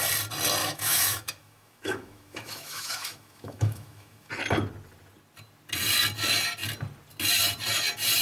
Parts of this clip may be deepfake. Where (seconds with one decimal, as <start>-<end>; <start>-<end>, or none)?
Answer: 0.6-4.3